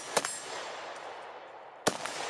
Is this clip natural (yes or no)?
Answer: yes